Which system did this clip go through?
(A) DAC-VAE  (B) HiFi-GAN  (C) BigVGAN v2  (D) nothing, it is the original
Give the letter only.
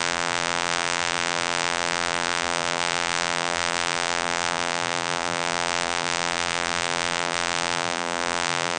C